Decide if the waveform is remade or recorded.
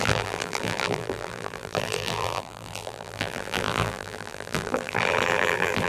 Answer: remade